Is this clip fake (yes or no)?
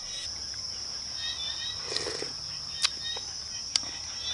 no